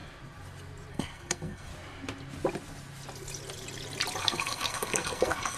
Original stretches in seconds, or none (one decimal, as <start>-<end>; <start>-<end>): 0.0-0.9; 1.7-4.2